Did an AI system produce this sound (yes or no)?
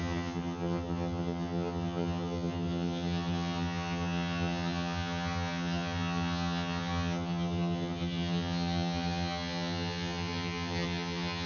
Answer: yes